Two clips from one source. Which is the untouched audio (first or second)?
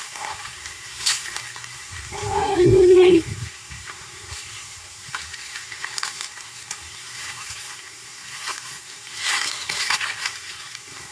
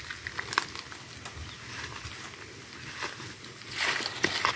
second